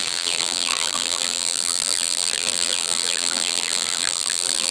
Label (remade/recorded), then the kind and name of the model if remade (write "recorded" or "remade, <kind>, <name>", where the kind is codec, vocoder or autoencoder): remade, vocoder, BigVGAN v2